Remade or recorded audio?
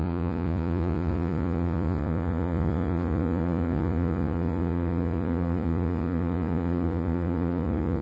remade